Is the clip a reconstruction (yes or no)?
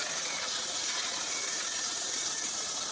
yes